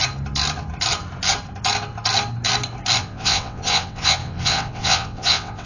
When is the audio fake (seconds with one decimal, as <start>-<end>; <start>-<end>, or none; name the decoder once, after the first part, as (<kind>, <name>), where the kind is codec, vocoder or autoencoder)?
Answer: 3.0-5.7 (vocoder, WaveNeXt)